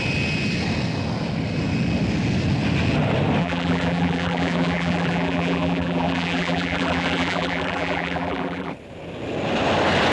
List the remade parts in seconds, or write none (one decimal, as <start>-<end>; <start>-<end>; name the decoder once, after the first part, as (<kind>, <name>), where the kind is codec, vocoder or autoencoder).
3.4-8.7 (vocoder, BigVGAN v2)